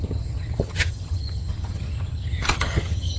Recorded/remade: remade